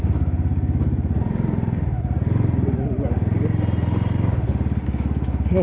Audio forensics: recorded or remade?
recorded